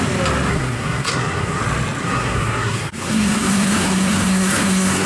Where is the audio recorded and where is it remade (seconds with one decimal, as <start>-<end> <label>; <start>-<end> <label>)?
0.0-0.5 recorded; 0.5-1.6 remade; 1.6-2.0 recorded; 2.0-5.1 remade